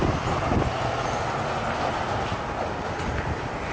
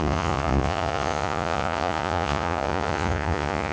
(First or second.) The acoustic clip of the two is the first